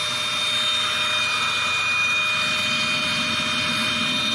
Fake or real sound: real